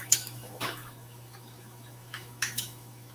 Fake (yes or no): yes